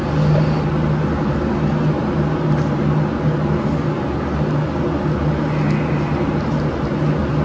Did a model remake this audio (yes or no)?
no